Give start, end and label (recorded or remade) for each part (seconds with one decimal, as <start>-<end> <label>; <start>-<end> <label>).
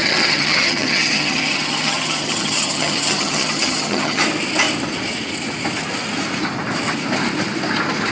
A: 0.0-4.2 remade; 4.2-8.1 recorded